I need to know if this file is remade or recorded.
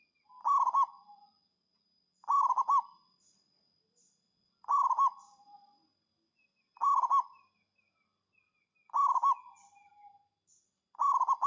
recorded